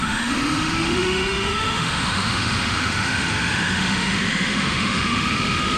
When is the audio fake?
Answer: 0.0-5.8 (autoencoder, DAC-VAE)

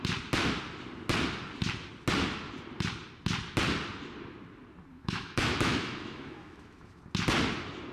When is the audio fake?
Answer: 4.9-7.0 (autoencoder, DAC-VAE)

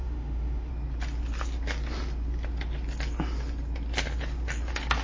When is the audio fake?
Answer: 0.0-0.7 (autoencoder, DAC-VAE)

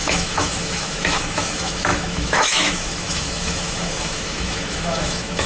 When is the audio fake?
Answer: 0.0-5.5 (autoencoder, DAC-VAE)

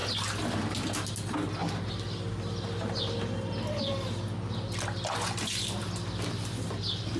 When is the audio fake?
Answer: none

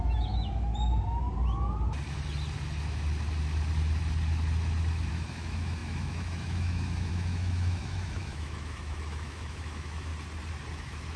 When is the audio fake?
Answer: 0.0-0.7 (autoencoder, DAC-VAE); 5.1-10.1; 10.7-11.2

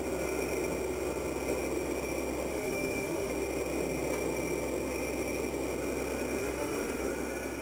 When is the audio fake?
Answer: 2.5-3.3 (autoencoder, DAC-VAE); 6.4-7.1

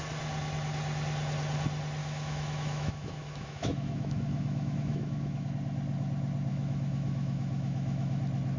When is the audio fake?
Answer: 2.0-5.5 (autoencoder, DAC-VAE); 6.5-8.2